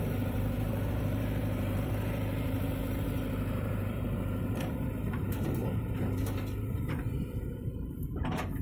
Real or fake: fake